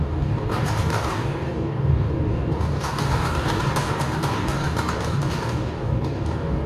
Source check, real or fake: fake